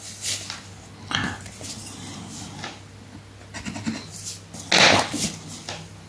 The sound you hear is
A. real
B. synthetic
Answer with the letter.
A